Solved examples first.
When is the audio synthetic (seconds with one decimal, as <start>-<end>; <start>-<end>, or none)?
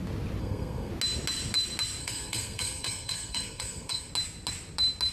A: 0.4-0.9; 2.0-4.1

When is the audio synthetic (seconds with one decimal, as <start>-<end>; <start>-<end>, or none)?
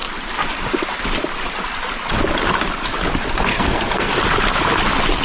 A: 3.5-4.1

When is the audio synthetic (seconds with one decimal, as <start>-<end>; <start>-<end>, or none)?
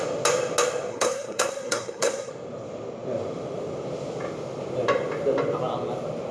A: 0.9-2.3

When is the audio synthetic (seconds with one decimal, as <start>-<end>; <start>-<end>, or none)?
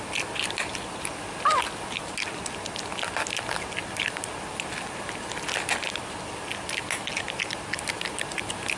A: none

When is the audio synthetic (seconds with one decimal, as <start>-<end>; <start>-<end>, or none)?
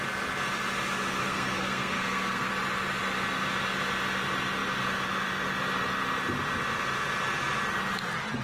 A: 1.2-2.5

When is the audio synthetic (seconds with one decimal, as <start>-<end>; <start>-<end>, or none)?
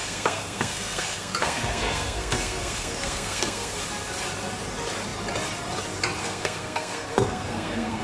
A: 0.0-3.8; 6.2-8.0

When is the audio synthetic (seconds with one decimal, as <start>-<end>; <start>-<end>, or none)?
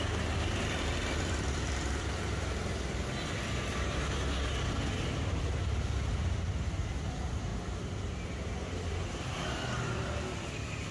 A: none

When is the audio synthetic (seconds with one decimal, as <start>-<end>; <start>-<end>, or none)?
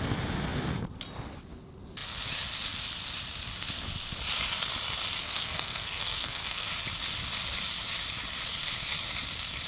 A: 5.2-6.7